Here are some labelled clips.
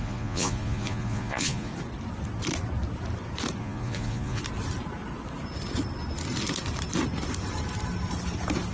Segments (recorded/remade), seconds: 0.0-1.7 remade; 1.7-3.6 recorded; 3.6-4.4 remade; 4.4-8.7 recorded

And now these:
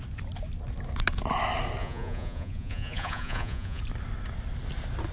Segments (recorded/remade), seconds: 0.0-1.8 recorded; 1.8-3.8 remade; 3.8-5.1 recorded

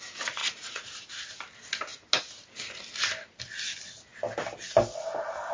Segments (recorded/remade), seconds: 0.0-0.4 recorded; 0.4-1.0 remade; 1.0-5.5 recorded

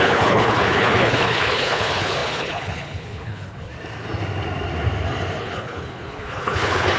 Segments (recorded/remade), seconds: 0.0-3.7 remade; 3.7-5.4 recorded; 5.4-7.0 remade